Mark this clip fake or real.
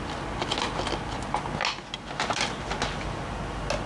real